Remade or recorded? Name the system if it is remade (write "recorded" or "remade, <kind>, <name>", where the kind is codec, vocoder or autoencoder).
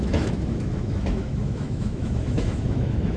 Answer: remade, autoencoder, DAC-VAE